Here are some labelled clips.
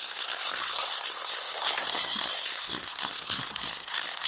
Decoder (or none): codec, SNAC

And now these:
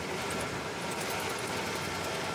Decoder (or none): none